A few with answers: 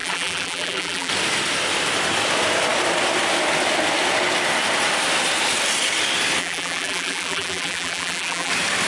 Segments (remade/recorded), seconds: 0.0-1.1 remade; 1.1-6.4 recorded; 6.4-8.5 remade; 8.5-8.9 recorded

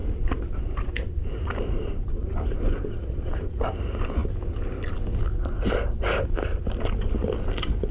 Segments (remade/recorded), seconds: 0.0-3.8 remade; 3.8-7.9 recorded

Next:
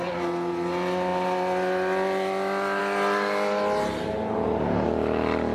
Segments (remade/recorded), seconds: 0.0-5.5 recorded